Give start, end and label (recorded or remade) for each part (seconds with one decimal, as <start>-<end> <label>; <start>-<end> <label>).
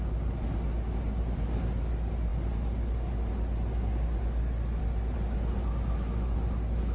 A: 0.0-6.9 recorded